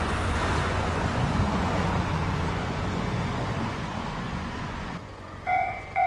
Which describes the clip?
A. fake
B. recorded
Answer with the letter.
A